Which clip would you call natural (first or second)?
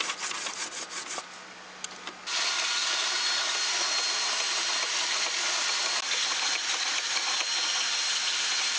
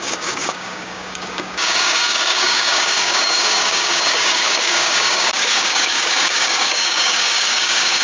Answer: first